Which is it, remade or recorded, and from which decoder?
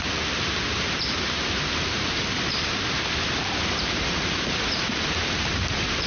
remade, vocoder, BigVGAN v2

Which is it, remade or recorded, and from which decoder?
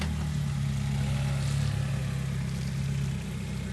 recorded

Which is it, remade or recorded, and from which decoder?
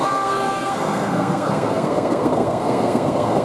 remade, codec, SNAC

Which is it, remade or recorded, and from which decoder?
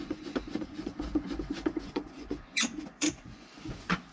remade, vocoder, Vocos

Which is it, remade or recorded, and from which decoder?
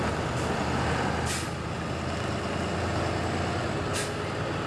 recorded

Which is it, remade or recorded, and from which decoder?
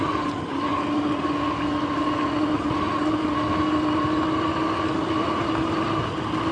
recorded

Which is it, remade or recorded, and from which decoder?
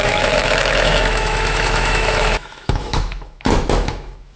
remade, autoencoder, DAC-VAE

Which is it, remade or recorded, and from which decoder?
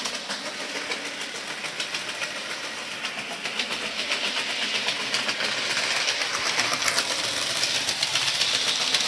recorded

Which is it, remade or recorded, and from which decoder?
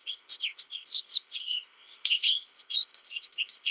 remade, codec, ZipCodec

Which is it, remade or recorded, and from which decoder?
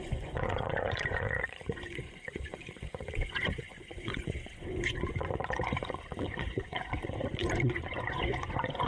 remade, vocoder, Vocos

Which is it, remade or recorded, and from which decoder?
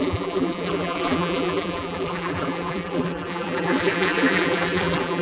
remade, vocoder, BigVGAN v2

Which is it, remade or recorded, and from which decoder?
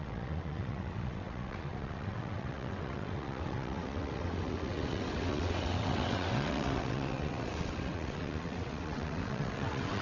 remade, vocoder, WaveNeXt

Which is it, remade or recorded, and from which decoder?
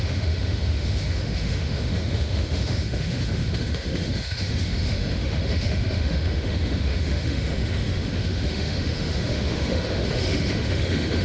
remade, autoencoder, DAC-VAE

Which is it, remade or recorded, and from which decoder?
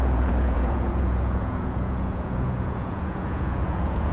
remade, vocoder, Vocos